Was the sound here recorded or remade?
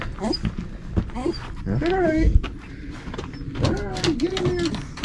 recorded